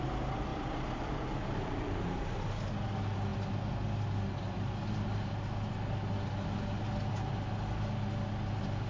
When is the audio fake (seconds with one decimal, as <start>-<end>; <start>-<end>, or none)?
0.5-2.7